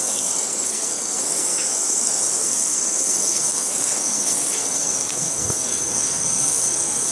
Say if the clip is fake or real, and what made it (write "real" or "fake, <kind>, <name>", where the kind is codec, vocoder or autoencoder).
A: fake, codec, SNAC